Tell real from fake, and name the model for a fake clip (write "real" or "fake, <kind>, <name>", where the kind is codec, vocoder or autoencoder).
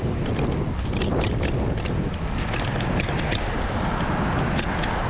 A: real